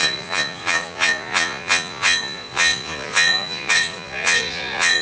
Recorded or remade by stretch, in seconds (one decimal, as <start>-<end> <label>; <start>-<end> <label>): 0.0-5.0 remade